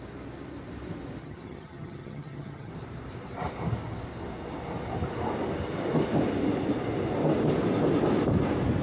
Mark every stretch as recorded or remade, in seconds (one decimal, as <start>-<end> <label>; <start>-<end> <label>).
0.0-1.2 recorded; 1.2-2.7 remade; 2.7-8.8 recorded